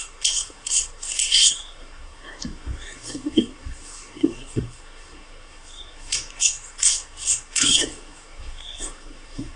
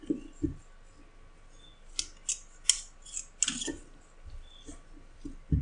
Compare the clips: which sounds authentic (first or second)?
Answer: second